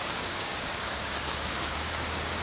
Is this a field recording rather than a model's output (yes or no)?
no